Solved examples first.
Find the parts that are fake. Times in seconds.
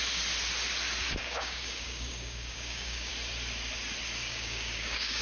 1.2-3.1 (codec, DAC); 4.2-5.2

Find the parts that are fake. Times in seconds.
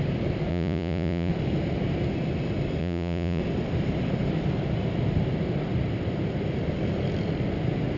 0.5-1.3 (vocoder, Vocos); 2.8-3.4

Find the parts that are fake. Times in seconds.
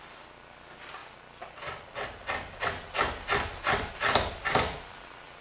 none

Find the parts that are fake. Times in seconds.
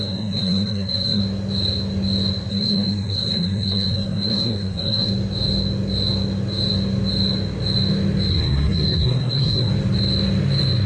0.0-1.2 (codec, SNAC); 2.5-5.1; 8.3-9.7